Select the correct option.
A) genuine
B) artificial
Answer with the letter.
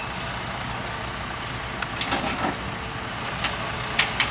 A